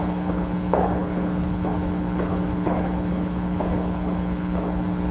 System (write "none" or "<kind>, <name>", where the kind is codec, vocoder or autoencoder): codec, HILCodec